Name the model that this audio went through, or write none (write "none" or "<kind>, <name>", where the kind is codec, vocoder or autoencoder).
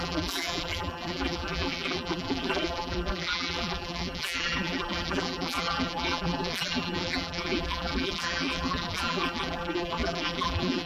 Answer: vocoder, BigVGAN v2